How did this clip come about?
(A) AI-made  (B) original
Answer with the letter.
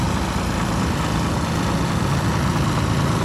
B